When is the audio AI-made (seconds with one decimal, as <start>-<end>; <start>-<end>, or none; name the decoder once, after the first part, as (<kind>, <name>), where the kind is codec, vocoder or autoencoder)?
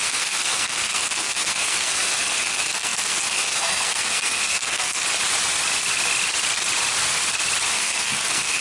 0.0-5.0 (codec, SNAC); 7.7-8.6